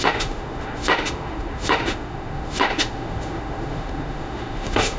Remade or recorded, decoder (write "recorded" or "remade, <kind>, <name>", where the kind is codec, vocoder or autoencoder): remade, autoencoder, DAC-VAE